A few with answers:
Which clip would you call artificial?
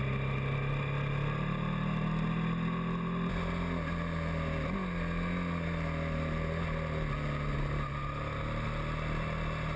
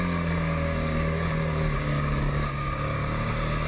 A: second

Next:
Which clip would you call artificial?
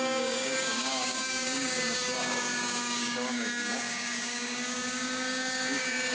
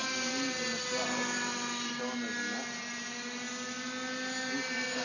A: first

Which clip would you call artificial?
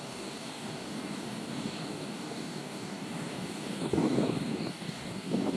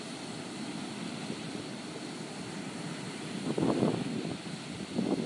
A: first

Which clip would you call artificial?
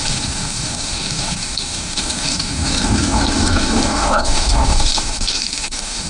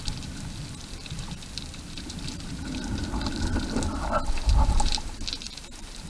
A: first